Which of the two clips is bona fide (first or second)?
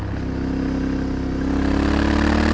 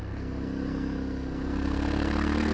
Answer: first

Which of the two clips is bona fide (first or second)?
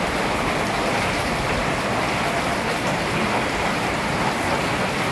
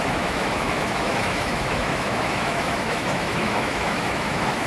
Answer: first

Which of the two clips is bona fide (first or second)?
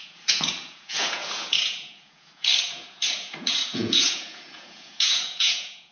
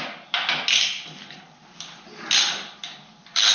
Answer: second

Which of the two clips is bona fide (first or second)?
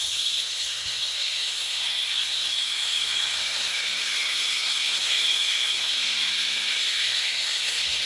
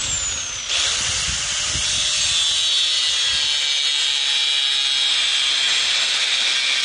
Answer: second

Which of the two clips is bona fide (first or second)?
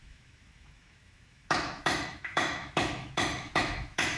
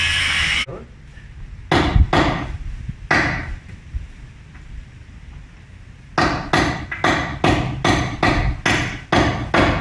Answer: second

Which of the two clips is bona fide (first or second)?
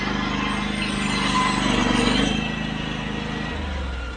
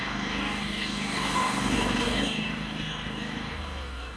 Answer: first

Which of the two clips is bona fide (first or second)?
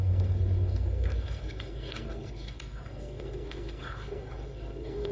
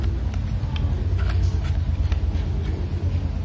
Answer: second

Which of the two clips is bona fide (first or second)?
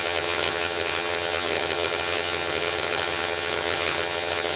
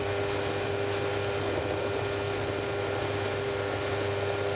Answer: second